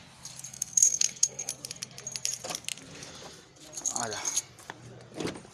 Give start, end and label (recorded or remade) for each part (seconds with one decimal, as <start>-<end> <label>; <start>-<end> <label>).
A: 0.0-0.5 recorded; 0.5-1.5 remade; 1.5-5.5 recorded